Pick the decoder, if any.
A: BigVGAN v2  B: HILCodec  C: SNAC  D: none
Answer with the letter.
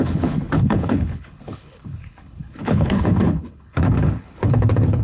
B